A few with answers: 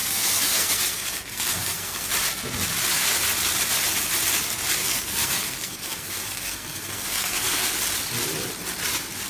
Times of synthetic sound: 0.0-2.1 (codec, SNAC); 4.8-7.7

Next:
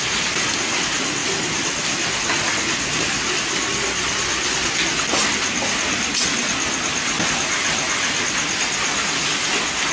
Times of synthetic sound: none

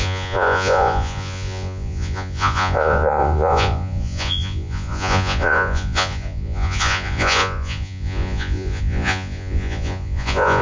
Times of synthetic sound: 0.0-10.6 (vocoder, Vocos)

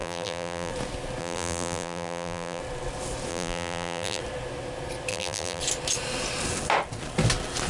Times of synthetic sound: 0.0-0.7 (vocoder, BigVGAN v2); 1.2-2.6; 3.3-4.2; 5.1-5.6

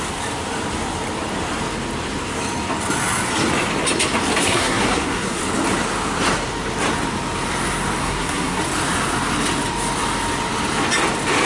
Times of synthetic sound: 4.4-5.4 (codec, SNAC); 8.0-8.6

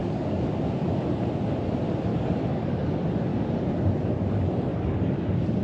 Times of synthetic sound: 0.0-0.5 (codec, DAC); 2.1-2.9; 4.7-5.6